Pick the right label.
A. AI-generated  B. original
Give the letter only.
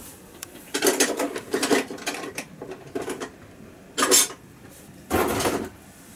A